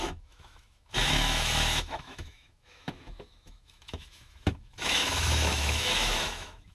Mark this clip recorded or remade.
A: remade